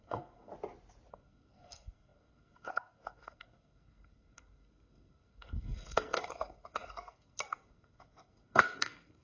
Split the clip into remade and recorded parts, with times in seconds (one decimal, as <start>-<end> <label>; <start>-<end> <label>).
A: 0.0-0.5 remade; 0.5-1.1 recorded; 1.1-9.2 remade